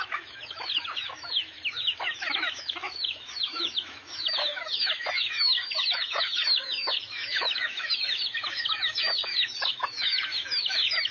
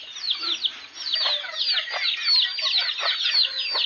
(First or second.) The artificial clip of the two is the first